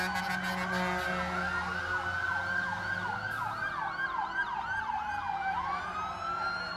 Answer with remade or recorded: recorded